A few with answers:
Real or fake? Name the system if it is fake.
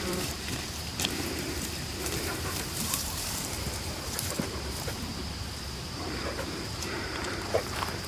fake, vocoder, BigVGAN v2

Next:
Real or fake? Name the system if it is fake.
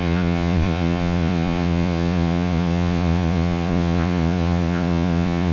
fake, vocoder, Vocos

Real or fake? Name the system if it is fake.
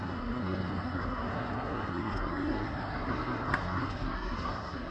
fake, codec, SNAC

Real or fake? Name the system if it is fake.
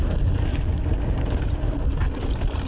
real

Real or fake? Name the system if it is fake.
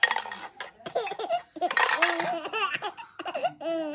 real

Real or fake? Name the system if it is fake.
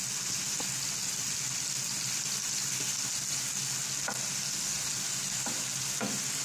real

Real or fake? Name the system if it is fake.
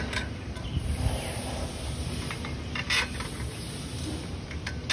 real